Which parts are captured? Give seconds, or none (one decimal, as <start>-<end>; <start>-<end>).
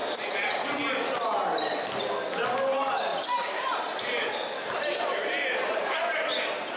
0.6-6.8